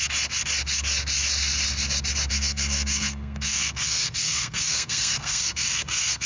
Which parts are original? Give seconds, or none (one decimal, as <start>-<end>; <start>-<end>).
0.0-2.3